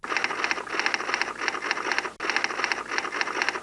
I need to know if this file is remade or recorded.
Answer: recorded